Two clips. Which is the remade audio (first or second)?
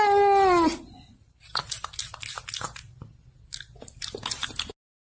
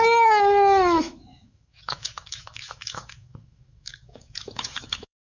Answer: second